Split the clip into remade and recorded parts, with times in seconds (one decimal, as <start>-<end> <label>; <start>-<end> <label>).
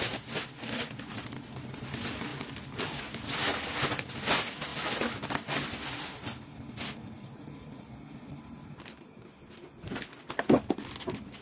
0.0-11.4 recorded